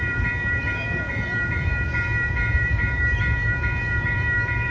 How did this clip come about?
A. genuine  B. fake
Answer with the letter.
B